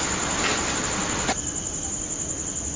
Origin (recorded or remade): recorded